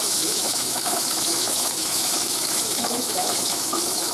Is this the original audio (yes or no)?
no